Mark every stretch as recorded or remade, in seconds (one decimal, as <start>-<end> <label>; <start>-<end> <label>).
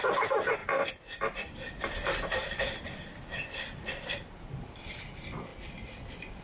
0.0-5.5 remade; 5.5-6.4 recorded